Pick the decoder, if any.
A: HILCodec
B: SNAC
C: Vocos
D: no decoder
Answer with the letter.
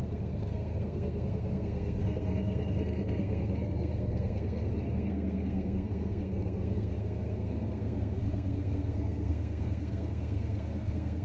B